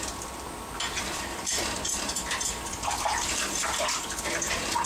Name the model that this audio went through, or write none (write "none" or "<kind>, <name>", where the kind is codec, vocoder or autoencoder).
vocoder, BigVGAN v2